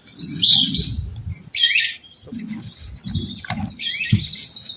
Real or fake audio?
real